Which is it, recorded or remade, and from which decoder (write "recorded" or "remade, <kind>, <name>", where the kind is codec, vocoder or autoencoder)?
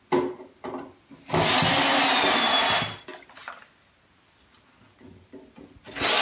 recorded